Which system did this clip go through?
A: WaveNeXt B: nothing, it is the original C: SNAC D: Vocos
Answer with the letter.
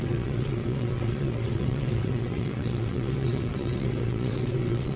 A